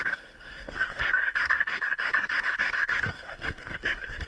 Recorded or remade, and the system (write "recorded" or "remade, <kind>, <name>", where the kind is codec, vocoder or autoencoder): remade, codec, SNAC